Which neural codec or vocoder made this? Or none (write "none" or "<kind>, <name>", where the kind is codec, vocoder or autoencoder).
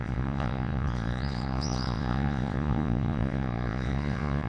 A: vocoder, Vocos